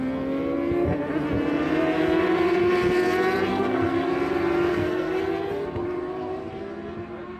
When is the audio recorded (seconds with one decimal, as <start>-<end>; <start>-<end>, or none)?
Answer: 0.0-3.5; 4.1-4.7; 5.2-7.4

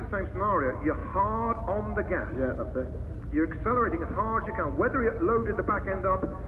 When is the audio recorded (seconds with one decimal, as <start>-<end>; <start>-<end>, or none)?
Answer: 0.0-6.5

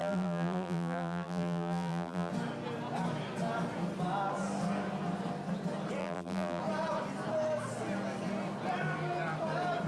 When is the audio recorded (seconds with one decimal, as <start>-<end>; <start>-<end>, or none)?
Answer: 2.3-6.0; 6.6-9.9

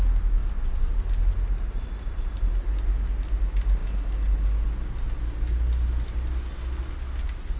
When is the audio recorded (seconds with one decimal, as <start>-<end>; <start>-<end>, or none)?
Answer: 0.0-7.6

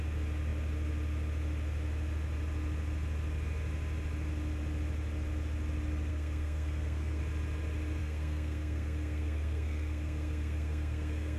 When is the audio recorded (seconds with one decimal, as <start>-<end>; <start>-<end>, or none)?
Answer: 0.0-6.1; 7.2-8.0

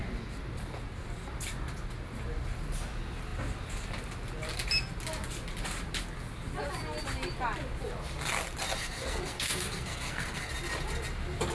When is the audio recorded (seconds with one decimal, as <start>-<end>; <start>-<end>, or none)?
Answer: 0.0-8.8; 10.5-11.5

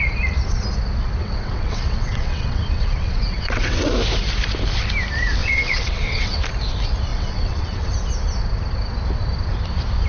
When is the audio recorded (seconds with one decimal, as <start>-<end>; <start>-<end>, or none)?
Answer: 0.0-1.2; 3.9-5.4; 6.4-7.1; 7.9-10.1

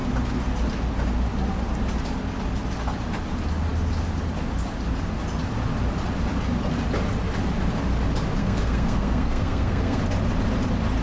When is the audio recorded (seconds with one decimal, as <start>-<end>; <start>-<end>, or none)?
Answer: 0.0-8.4; 10.0-11.0